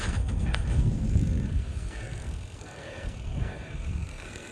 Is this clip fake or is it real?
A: fake